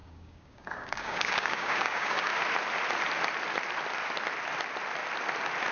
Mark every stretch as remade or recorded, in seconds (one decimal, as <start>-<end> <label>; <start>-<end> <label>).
0.0-2.3 remade; 2.3-5.7 recorded